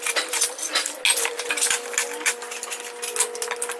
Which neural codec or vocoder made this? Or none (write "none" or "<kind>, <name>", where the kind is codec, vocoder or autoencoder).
none